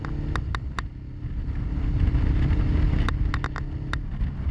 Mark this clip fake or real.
real